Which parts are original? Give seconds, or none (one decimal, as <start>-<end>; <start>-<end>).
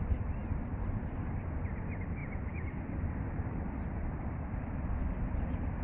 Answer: 0.0-0.4; 1.0-2.2; 4.8-5.8